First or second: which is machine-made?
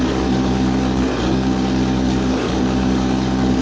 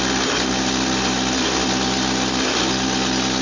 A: first